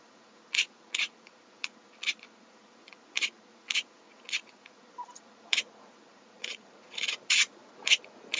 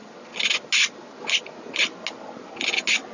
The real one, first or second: second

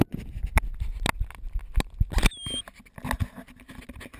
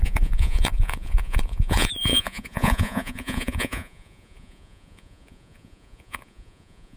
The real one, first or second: first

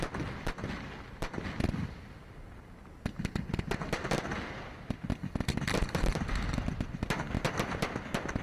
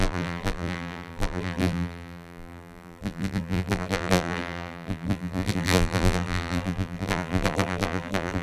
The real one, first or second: first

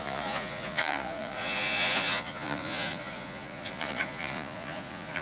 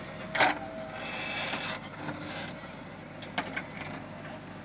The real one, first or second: second